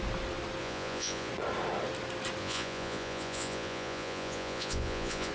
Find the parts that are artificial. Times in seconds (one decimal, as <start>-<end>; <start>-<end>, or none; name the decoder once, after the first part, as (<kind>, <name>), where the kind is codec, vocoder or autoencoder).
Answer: 0.6-1.3 (vocoder, Vocos); 2.4-5.3